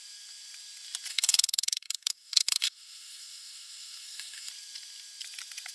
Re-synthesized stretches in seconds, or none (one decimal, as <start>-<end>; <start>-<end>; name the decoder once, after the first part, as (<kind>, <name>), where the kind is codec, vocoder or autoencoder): 1.1-4.5 (codec, SNAC)